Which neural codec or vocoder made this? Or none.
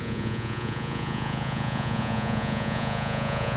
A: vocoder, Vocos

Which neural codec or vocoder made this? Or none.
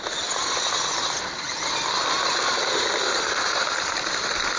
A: none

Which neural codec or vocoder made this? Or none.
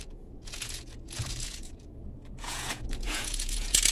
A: vocoder, Vocos